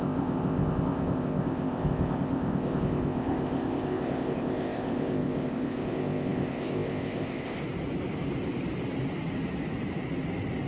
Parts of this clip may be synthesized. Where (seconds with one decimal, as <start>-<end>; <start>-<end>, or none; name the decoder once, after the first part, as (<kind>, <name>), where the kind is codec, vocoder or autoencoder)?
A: 0.0-7.6 (codec, ZipCodec)